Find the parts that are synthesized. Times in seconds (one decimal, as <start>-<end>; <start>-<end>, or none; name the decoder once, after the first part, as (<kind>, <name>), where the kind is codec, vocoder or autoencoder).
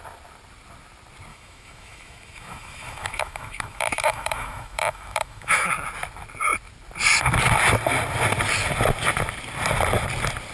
1.3-5.7 (autoencoder, DAC-VAE)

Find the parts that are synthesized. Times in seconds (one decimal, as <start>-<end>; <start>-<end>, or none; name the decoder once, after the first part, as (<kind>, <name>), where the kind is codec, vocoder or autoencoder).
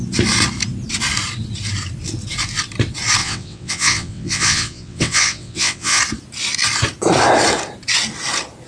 3.2-6.0 (vocoder, WaveNeXt)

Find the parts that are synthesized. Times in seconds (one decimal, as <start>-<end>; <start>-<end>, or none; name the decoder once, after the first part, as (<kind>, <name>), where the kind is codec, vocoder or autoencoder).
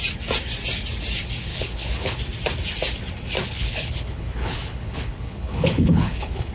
1.5-2.2 (codec, HILCodec); 3.4-6.5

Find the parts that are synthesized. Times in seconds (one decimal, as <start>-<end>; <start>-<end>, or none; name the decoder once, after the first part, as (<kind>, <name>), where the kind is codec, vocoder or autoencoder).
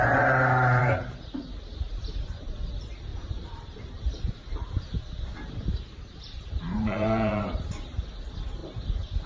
0.8-1.9 (vocoder, BigVGAN v2); 3.1-8.2; 8.6-9.3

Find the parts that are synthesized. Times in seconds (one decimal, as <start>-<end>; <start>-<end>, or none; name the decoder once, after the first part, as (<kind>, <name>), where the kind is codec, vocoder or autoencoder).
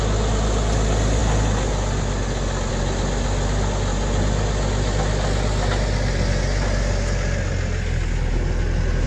none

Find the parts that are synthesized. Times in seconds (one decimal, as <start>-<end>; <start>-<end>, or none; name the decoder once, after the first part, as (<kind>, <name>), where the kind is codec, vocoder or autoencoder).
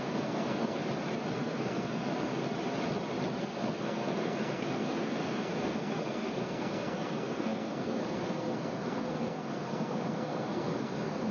0.0-0.8 (codec, SNAC); 1.3-2.4; 3.4-11.3